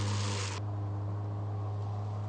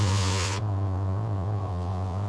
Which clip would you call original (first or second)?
first